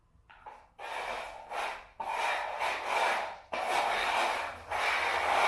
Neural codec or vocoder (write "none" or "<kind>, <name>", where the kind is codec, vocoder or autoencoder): none